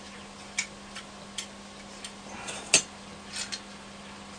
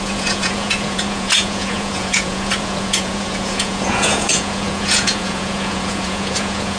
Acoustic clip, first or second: first